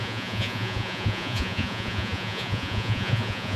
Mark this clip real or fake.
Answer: fake